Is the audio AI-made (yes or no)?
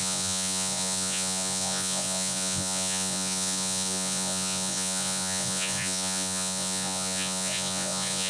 yes